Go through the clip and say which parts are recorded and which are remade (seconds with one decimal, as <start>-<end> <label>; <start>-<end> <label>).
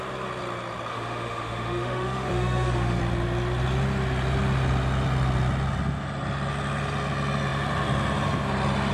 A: 0.0-0.9 recorded; 0.9-3.0 remade; 3.0-8.9 recorded